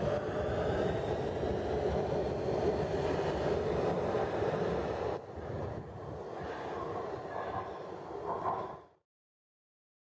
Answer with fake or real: real